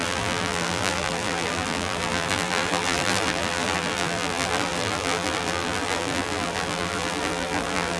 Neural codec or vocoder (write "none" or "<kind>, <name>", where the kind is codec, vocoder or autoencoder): vocoder, BigVGAN v2